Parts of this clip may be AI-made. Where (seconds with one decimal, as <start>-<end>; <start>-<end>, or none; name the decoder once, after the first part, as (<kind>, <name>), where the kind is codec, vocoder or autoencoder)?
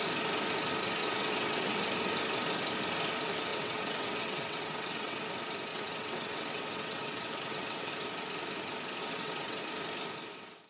1.0-1.8 (vocoder, WaveNeXt); 3.5-5.2; 5.7-7.9; 9.0-9.6